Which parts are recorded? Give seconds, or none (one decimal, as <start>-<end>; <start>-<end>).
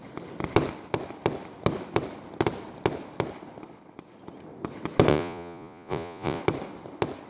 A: 0.0-5.1; 6.4-7.3